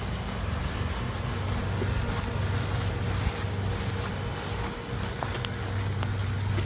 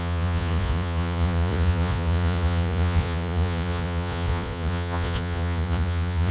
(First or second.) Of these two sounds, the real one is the first